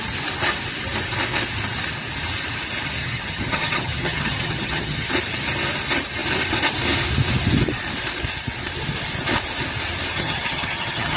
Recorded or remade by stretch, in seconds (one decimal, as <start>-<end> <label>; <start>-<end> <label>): 0.0-3.0 recorded; 3.0-5.1 remade; 5.1-10.1 recorded; 10.1-11.2 remade